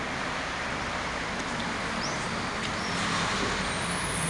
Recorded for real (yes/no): yes